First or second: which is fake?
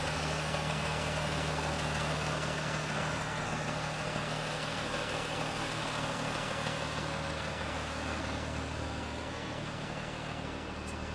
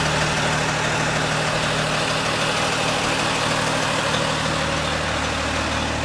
first